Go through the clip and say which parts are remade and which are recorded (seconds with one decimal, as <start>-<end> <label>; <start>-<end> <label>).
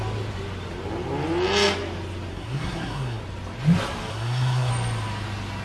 0.0-2.3 recorded; 2.3-3.2 remade; 3.2-4.1 recorded; 4.1-4.7 remade; 4.7-5.6 recorded